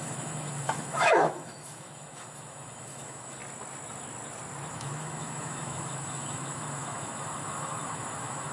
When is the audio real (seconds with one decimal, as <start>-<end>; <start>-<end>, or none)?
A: 3.4-4.7